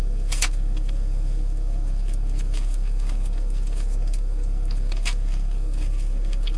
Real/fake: fake